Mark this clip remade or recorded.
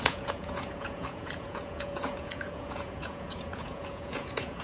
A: remade